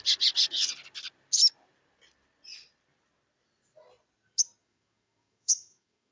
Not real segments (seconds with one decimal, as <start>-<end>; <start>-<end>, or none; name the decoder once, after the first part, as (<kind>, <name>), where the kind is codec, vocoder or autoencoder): 4.6-6.1 (autoencoder, DAC-VAE)